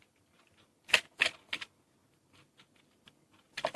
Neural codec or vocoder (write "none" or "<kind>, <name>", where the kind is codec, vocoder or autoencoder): none